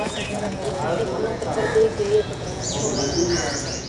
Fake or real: fake